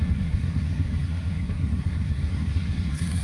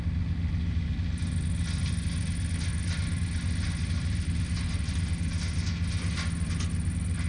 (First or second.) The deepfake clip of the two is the first